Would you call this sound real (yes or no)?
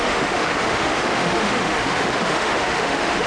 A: no